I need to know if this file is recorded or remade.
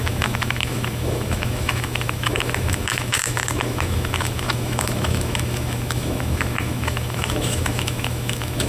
remade